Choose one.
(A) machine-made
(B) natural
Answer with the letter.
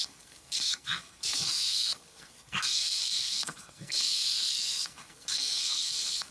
A